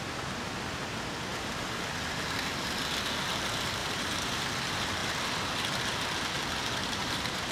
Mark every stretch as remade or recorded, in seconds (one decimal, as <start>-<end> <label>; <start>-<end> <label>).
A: 0.0-3.8 recorded; 3.8-4.4 remade; 4.4-6.8 recorded; 6.8-7.5 remade